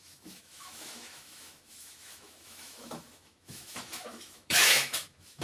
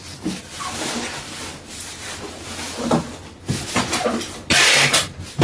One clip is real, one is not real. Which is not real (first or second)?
first